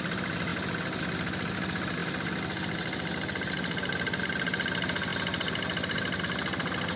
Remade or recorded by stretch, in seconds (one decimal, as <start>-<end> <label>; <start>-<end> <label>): 0.0-7.0 recorded